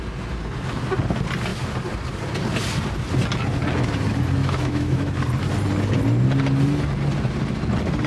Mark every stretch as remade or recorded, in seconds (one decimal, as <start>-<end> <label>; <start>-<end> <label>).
0.0-4.4 recorded; 4.4-5.1 remade; 5.1-8.1 recorded